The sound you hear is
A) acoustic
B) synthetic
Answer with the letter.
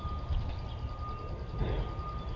A